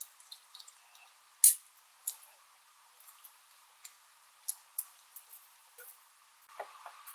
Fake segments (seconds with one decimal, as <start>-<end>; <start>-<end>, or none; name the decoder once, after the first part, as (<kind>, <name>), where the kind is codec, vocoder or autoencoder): 5.6-6.2 (vocoder, BigVGAN v2)